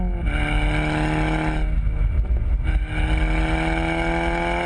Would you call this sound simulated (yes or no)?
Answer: no